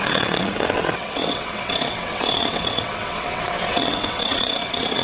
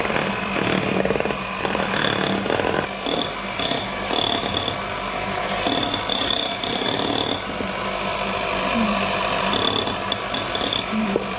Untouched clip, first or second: second